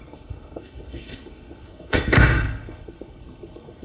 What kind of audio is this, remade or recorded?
remade